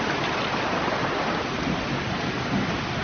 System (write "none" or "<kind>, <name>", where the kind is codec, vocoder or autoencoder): none